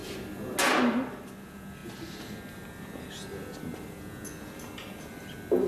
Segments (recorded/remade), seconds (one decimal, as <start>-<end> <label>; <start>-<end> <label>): 0.0-5.7 recorded